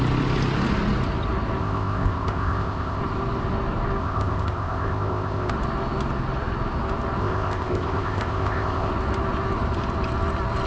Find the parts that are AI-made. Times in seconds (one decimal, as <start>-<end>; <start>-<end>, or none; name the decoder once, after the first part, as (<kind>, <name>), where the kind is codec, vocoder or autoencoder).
1.6-3.0 (codec, ZipCodec); 4.0-5.5; 7.2-8.9